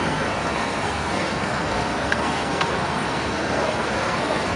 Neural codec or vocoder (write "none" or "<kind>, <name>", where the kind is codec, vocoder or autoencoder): codec, SNAC